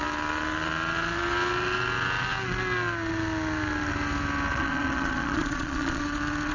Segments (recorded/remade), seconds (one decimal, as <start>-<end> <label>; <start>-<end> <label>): 0.0-4.5 recorded; 4.5-6.0 remade; 6.0-6.5 recorded